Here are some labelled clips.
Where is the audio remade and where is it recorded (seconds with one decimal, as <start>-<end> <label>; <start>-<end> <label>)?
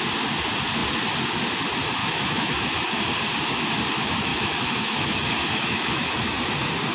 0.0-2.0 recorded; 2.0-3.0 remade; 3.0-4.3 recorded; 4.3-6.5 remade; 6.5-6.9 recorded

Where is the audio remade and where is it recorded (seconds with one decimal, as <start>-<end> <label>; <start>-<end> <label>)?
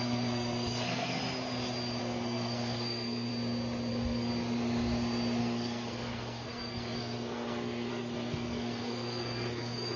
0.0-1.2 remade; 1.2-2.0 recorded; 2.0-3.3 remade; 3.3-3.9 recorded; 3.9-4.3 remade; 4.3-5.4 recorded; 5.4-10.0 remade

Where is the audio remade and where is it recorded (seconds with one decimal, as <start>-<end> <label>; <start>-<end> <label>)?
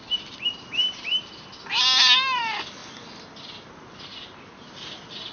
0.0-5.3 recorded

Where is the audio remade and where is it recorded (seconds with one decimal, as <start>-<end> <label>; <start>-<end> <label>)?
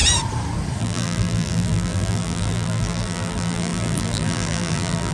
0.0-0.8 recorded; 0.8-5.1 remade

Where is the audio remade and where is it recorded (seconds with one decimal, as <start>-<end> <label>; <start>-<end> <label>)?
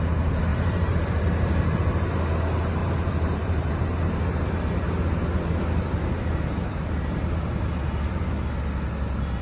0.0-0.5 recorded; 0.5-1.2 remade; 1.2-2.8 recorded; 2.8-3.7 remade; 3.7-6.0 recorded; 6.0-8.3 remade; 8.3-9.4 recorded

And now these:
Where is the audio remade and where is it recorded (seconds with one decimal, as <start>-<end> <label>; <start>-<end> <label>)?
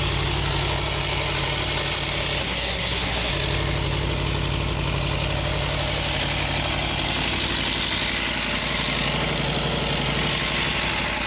0.0-2.4 recorded; 2.4-3.3 remade; 3.3-11.3 recorded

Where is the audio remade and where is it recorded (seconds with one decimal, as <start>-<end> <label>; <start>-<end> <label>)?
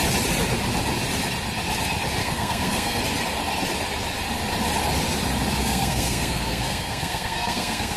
0.0-2.2 recorded; 2.2-3.0 remade; 3.0-5.6 recorded; 5.6-8.0 remade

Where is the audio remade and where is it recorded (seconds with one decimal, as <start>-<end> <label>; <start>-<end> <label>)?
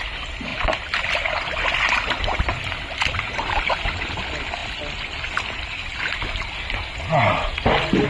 0.0-4.6 remade; 4.6-8.1 recorded